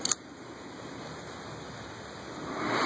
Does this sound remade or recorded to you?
recorded